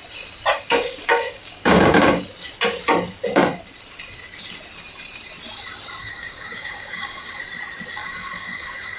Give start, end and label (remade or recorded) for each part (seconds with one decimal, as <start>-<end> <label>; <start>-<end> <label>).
0.0-0.5 recorded; 0.5-2.2 remade; 2.2-6.0 recorded; 6.0-7.4 remade; 7.4-8.0 recorded; 8.0-9.0 remade